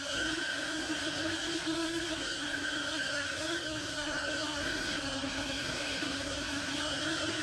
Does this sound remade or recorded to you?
remade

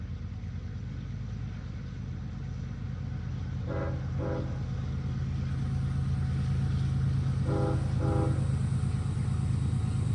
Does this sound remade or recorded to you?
recorded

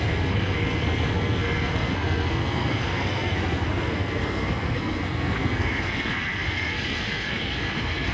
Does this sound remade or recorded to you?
remade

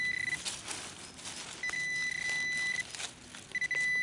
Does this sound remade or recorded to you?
recorded